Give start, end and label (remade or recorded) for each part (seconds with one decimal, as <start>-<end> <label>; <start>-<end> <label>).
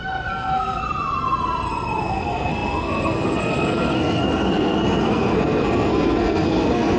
0.0-0.8 remade; 0.8-2.0 recorded; 2.0-7.0 remade